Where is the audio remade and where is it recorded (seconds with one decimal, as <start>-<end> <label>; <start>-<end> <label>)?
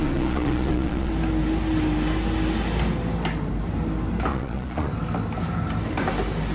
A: 0.0-1.1 remade; 1.1-4.3 recorded; 4.3-4.9 remade; 4.9-6.5 recorded